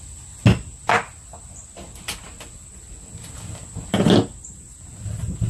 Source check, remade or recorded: recorded